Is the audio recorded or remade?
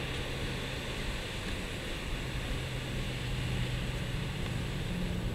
recorded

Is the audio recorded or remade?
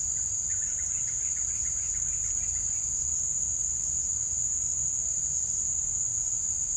recorded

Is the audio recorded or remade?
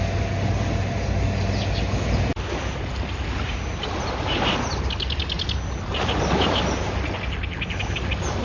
recorded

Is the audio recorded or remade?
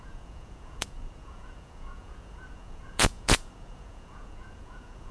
remade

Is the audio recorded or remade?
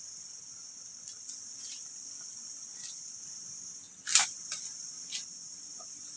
recorded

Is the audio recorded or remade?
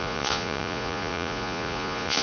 remade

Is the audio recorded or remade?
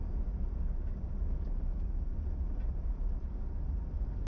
recorded